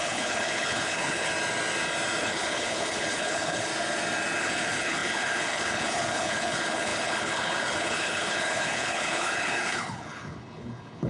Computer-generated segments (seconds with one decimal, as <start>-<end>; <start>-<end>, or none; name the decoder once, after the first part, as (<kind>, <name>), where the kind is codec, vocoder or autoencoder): 0.0-1.3 (codec, HILCodec); 2.2-3.7; 4.4-11.1